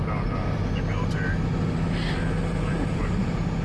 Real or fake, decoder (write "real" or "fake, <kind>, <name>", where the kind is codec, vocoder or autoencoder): real